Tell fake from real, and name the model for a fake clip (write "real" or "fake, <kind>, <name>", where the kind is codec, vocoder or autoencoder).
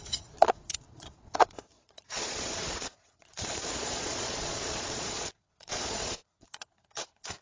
fake, vocoder, Vocos